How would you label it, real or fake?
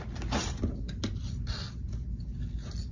real